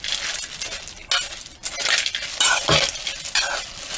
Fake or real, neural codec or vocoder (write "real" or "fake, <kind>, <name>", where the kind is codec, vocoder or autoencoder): real